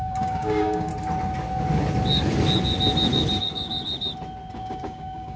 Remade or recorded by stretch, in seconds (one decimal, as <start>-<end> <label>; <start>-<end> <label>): 0.0-0.9 remade; 0.9-3.4 recorded; 3.4-3.8 remade; 3.8-4.5 recorded; 4.5-5.4 remade